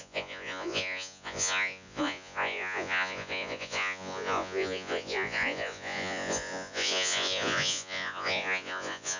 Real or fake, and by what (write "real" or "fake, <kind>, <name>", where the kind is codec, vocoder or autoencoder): fake, vocoder, Vocos